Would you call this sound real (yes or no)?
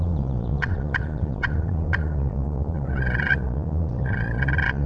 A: no